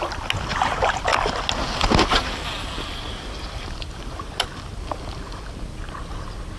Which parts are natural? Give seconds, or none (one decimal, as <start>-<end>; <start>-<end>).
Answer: 0.0-6.6